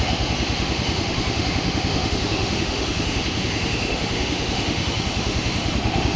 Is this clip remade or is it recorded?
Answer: remade